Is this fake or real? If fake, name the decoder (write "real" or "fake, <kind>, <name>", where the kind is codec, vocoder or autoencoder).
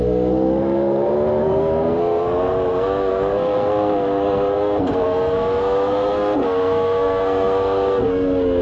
fake, codec, SNAC